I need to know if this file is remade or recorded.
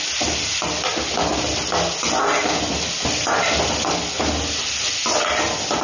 recorded